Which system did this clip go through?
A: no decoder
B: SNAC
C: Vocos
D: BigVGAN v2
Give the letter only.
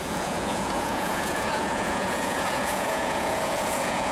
C